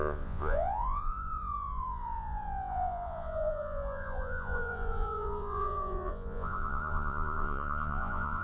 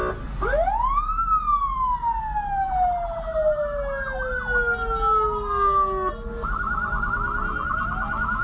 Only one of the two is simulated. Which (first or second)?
first